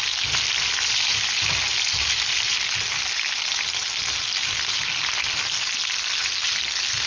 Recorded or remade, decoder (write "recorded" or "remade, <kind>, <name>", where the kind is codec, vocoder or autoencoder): recorded